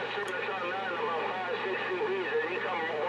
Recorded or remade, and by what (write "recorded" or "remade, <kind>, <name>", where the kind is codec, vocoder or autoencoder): recorded